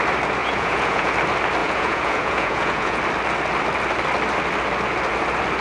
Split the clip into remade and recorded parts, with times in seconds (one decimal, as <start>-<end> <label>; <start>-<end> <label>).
0.0-0.4 recorded; 0.4-1.1 remade; 1.1-1.6 recorded; 1.6-3.0 remade; 3.0-5.6 recorded